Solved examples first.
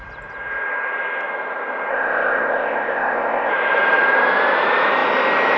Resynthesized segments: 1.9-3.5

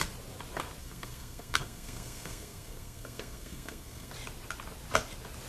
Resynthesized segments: 0.8-4.1